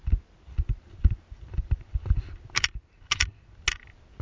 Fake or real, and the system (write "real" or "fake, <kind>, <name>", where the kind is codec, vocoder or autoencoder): real